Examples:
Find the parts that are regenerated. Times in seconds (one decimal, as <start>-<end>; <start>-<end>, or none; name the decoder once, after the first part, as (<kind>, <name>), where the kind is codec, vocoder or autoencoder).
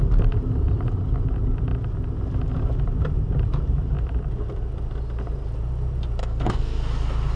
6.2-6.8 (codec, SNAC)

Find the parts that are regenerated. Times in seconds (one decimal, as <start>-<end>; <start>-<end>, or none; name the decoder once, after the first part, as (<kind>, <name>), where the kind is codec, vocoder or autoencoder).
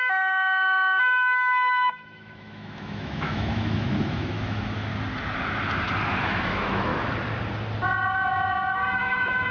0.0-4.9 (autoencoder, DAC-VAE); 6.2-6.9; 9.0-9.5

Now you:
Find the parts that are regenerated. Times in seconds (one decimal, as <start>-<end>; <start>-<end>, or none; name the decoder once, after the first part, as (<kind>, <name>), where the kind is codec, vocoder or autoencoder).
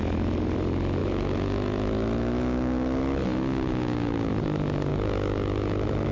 1.0-4.3 (autoencoder, DAC-VAE); 4.9-6.1